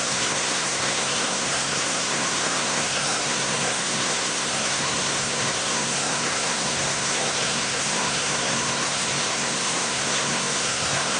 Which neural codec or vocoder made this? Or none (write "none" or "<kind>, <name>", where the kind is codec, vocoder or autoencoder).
codec, SNAC